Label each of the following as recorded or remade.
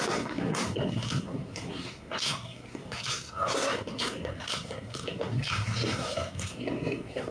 remade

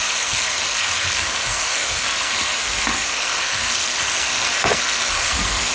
remade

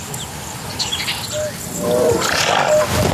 recorded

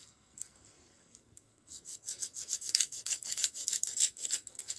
remade